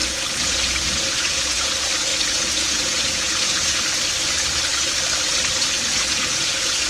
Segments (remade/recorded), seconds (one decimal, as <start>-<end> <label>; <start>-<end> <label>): 0.0-1.7 remade; 1.7-2.1 recorded; 2.1-3.8 remade; 3.8-5.6 recorded; 5.6-6.9 remade